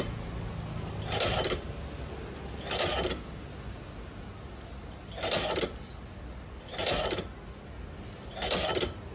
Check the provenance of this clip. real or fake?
real